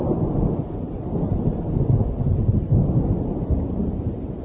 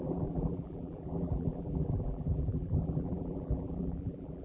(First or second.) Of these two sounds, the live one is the first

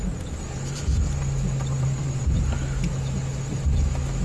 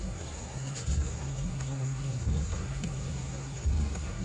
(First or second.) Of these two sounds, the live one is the first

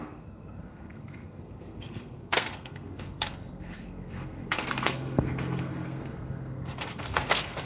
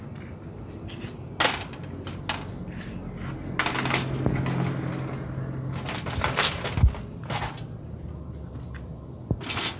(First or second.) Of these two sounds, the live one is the second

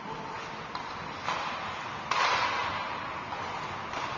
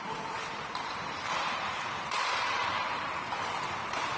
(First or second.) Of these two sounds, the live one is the first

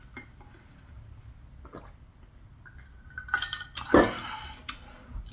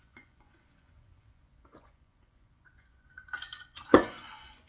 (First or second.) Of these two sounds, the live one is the first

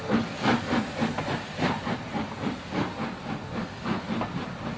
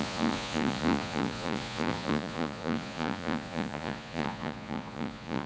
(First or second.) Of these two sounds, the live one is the first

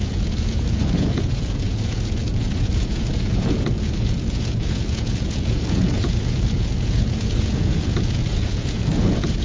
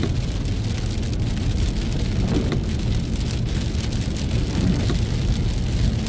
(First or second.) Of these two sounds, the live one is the second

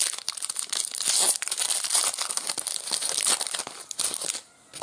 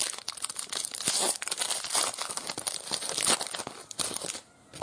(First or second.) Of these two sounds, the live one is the first